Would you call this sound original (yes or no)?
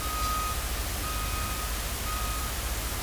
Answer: yes